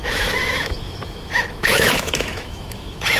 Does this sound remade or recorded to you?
remade